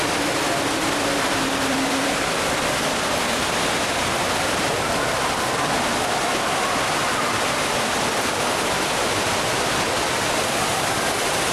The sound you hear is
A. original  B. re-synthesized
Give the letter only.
B